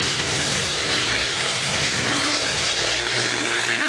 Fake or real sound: fake